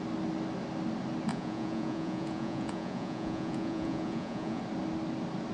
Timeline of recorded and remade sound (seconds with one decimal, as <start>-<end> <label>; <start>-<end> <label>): 0.0-1.3 recorded; 1.3-4.6 remade; 4.6-5.5 recorded

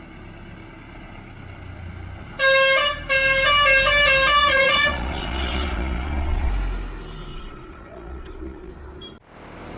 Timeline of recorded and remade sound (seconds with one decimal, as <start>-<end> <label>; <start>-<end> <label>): 0.0-4.4 recorded; 4.4-6.5 remade; 6.5-7.3 recorded; 7.3-8.7 remade; 8.7-9.8 recorded

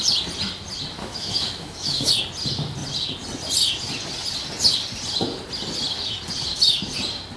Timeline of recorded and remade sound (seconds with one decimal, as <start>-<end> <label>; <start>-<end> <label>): 0.0-1.0 recorded; 1.0-2.1 remade; 2.1-7.4 recorded

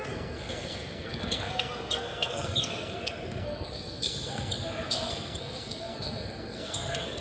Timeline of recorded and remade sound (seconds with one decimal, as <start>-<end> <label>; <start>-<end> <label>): 0.0-7.2 remade